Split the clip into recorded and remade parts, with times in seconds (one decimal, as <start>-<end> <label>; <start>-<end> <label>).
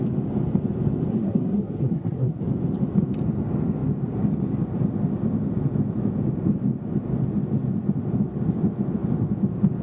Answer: 0.0-1.1 recorded; 1.1-2.4 remade; 2.4-9.8 recorded